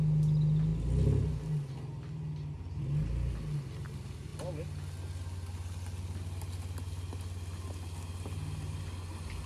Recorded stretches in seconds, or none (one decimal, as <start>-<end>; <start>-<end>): 0.0-9.5

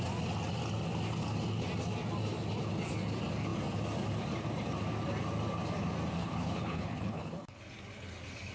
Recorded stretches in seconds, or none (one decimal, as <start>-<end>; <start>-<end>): 0.0-6.2; 7.6-8.5

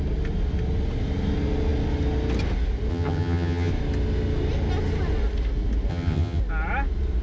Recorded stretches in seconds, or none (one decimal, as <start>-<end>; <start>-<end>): 0.0-2.9; 3.7-5.9; 6.4-7.2

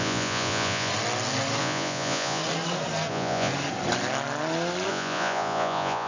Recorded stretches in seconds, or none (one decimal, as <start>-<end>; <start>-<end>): 0.9-1.6; 2.4-3.1; 3.5-4.9

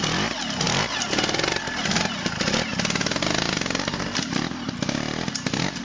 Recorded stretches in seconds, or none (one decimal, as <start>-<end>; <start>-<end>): 0.0-5.8